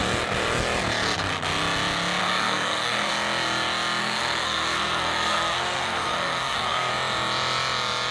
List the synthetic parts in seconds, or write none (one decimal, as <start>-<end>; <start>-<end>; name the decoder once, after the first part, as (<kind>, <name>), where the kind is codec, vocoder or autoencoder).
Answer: 2.2-3.1 (codec, SNAC); 4.0-6.9